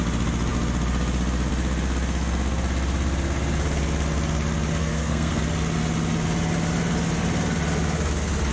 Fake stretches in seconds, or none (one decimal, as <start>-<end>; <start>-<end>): 4.8-5.4